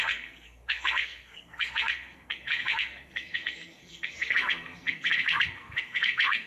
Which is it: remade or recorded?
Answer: remade